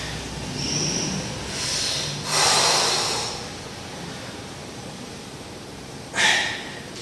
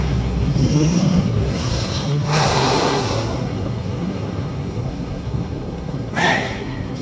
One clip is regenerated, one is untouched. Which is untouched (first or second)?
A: first